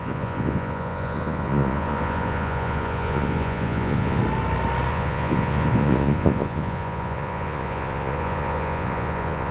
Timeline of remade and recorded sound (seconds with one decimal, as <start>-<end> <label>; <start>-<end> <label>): 0.0-4.2 remade; 4.2-4.9 recorded; 4.9-9.5 remade